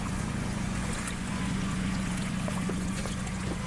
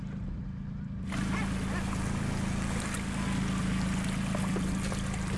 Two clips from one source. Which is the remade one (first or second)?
first